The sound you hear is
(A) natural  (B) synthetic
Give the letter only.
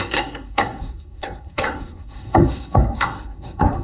B